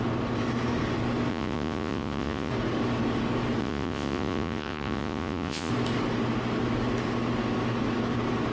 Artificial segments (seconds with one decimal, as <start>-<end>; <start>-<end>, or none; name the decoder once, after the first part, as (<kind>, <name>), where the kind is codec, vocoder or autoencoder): 1.3-2.5 (vocoder, Vocos); 3.6-5.7

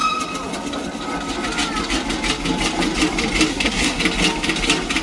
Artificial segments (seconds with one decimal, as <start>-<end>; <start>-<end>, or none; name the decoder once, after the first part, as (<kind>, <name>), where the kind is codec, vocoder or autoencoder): 3.5-4.0 (codec, SNAC)

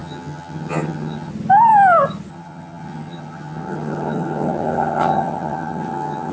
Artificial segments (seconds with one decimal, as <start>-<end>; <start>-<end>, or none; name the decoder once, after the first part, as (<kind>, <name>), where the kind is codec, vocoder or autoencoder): 0.0-1.3 (vocoder, HiFi-GAN); 2.3-6.3

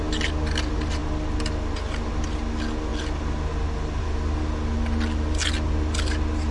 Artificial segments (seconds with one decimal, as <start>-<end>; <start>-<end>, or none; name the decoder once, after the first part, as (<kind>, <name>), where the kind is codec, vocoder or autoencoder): none

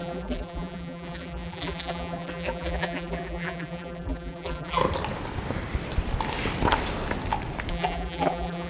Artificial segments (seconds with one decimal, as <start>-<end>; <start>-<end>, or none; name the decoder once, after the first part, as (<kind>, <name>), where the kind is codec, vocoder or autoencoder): 0.0-4.8 (vocoder, BigVGAN v2); 7.7-8.7

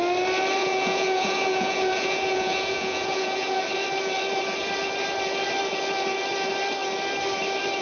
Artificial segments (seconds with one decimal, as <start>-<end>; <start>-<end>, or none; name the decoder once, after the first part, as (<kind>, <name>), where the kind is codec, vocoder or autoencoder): 0.6-3.6 (vocoder, Vocos)